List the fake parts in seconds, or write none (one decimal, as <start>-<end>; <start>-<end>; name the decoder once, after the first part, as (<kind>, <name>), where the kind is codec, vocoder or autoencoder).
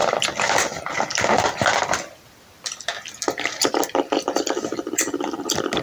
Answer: none